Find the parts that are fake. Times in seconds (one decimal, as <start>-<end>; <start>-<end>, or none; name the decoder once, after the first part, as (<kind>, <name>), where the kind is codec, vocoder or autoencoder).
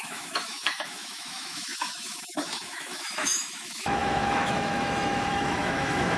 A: 0.0-6.2 (autoencoder, DAC-VAE)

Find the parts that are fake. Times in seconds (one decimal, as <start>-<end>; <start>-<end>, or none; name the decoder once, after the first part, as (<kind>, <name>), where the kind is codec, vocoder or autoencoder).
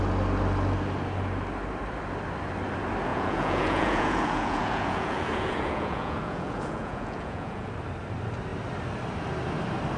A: 3.1-7.7 (vocoder, Vocos)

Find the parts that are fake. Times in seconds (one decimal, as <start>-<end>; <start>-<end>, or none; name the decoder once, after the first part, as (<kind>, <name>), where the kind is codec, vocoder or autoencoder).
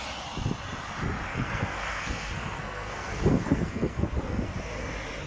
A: 1.3-4.5 (codec, SNAC)